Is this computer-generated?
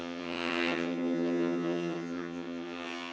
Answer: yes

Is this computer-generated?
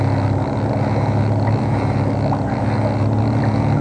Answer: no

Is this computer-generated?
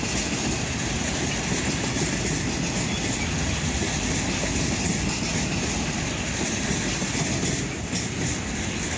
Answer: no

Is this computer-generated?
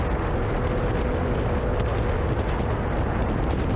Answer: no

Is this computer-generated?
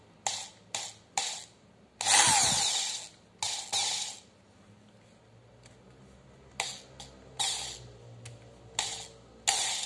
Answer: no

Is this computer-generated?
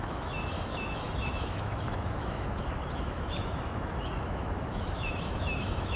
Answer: yes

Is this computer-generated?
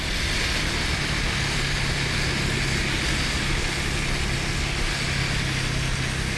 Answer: no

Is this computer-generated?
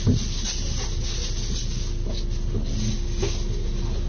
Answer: no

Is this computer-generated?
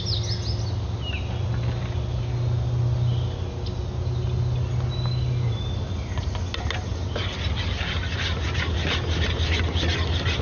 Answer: no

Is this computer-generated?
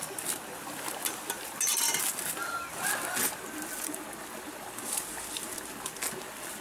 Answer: no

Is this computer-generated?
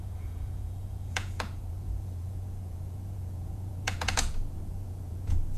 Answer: yes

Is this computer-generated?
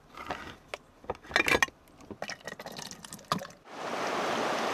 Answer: no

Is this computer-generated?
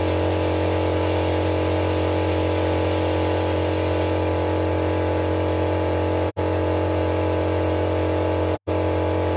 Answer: no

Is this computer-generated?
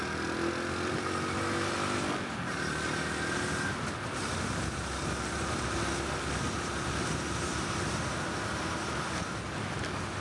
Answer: no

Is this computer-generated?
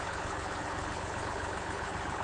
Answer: yes